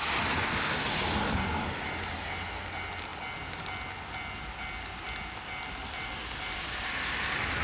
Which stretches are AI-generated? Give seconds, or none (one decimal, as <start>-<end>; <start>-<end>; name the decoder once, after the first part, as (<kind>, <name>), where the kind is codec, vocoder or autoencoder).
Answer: none